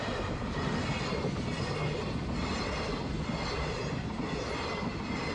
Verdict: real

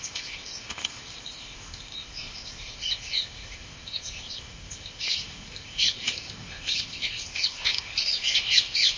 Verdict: fake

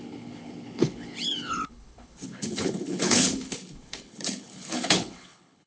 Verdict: fake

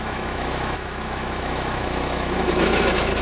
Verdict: fake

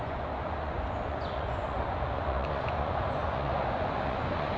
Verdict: fake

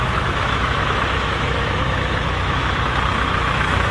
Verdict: fake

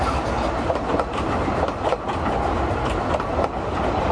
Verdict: real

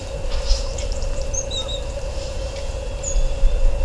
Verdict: fake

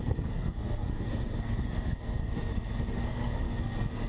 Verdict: fake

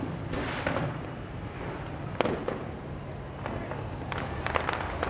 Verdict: real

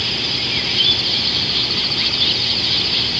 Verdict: real